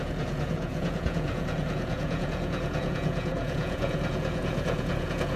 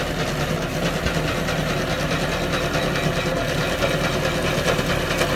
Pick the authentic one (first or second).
second